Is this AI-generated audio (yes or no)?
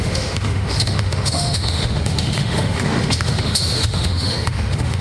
yes